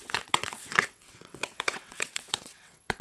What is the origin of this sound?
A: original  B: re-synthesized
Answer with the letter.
B